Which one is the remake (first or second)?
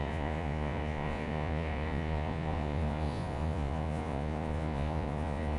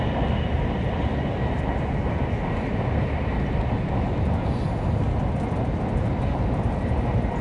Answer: first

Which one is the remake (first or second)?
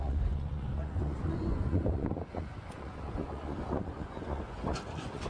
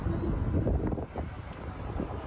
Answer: first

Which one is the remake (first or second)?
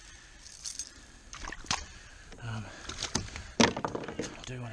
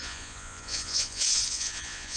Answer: second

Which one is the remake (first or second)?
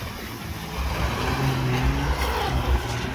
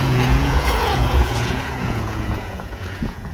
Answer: second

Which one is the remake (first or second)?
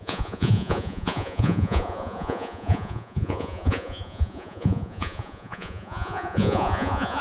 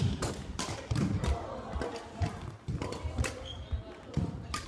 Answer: first